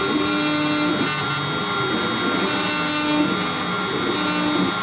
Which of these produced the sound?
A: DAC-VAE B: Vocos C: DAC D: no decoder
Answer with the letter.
D